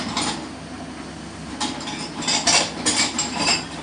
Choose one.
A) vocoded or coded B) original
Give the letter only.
B